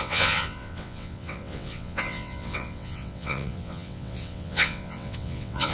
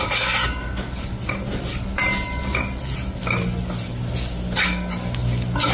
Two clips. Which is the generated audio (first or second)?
first